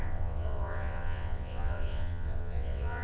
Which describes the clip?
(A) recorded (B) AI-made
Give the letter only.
B